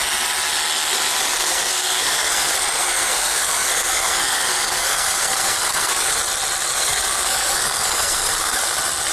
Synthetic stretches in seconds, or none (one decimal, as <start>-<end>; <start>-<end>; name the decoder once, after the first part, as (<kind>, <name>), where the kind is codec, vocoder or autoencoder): 1.4-6.2 (codec, SNAC); 6.7-8.6